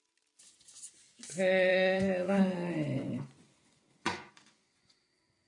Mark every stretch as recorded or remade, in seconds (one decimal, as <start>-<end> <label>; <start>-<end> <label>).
0.0-1.7 recorded; 1.7-5.0 remade; 5.0-5.5 recorded